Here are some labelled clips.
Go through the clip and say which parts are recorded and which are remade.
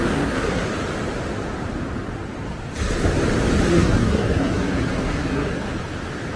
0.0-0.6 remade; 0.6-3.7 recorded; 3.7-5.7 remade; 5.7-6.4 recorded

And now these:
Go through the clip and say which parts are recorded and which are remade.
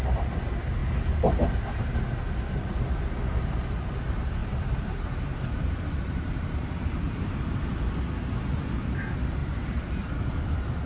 0.0-4.4 recorded; 4.4-7.8 remade; 7.8-9.4 recorded; 9.4-10.1 remade; 10.1-10.9 recorded